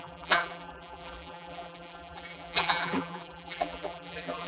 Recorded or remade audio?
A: remade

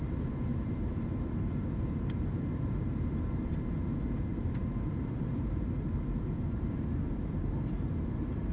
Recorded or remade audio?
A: remade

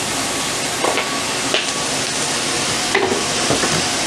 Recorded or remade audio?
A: recorded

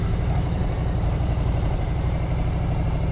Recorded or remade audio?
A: remade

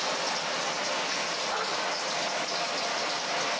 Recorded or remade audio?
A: recorded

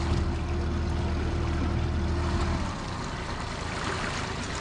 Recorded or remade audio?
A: recorded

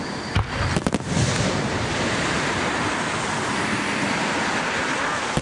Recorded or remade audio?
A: remade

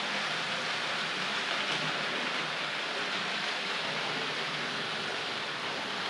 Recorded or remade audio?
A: remade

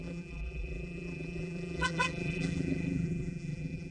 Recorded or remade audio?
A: remade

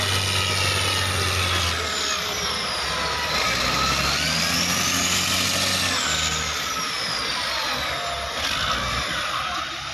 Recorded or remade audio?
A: recorded